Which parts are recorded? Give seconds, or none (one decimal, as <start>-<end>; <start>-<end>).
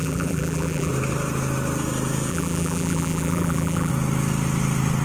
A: 0.9-2.3; 3.9-5.0